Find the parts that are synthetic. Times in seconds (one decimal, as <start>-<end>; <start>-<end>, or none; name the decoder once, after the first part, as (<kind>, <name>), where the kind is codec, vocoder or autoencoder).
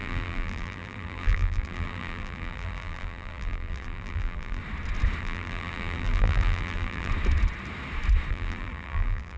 0.0-4.6 (vocoder, BigVGAN v2); 5.2-7.1; 8.3-9.4